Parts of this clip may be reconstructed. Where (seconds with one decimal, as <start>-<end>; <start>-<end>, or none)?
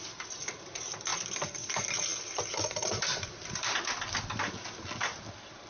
2.1-4.5